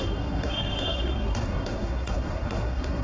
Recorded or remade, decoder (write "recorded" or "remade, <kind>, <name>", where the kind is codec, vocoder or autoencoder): remade, codec, SNAC